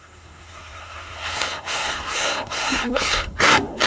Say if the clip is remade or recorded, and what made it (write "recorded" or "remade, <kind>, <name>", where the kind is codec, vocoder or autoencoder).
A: remade, codec, SNAC